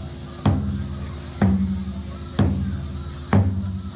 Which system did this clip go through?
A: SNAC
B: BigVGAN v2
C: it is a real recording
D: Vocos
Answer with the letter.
C